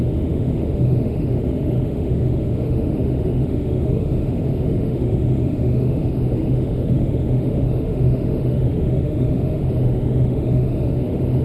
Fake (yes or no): yes